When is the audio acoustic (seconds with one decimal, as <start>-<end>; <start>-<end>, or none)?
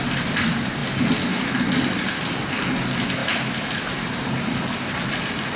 0.0-5.6